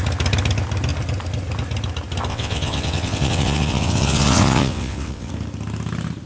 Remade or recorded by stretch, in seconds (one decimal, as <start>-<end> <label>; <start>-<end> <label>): 0.0-2.3 recorded; 2.3-5.3 remade; 5.3-6.3 recorded